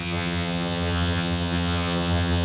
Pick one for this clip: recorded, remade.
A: remade